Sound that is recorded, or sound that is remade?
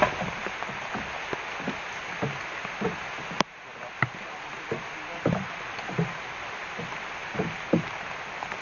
recorded